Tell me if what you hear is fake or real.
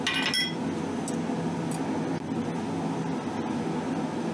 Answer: real